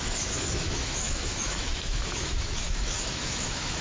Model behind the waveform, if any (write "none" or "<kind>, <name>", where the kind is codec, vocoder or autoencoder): autoencoder, DAC-VAE